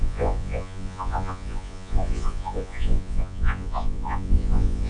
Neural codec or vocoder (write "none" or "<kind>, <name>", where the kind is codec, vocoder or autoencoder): vocoder, Vocos